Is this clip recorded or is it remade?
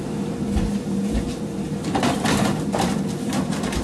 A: remade